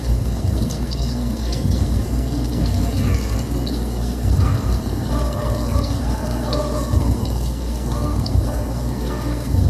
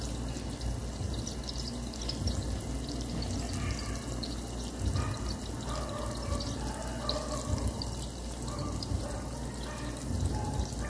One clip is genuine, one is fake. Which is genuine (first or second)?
second